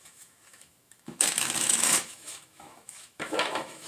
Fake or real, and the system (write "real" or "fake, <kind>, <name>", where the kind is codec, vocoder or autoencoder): fake, autoencoder, DAC-VAE